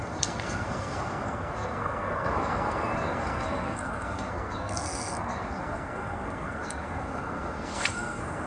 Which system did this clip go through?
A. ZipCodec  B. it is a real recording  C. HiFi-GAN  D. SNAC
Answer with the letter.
D